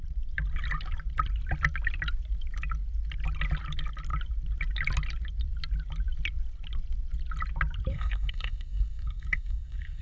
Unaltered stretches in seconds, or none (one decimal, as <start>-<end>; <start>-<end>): 0.0-7.9